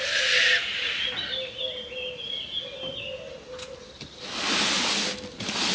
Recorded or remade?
recorded